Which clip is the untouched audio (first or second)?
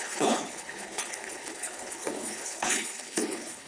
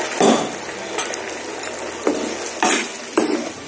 second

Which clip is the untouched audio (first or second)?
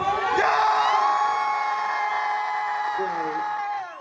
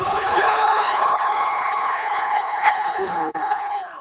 first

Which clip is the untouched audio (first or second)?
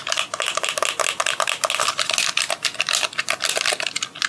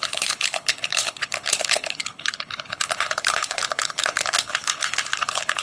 first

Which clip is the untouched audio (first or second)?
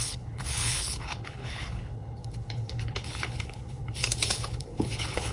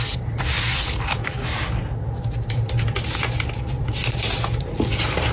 second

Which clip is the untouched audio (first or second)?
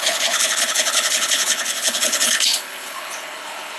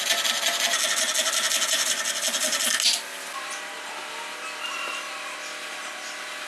second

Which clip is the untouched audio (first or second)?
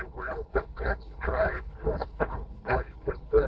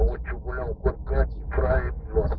second